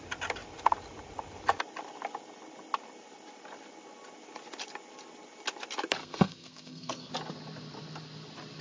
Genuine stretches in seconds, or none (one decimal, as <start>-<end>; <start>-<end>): 0.0-6.0; 7.1-8.6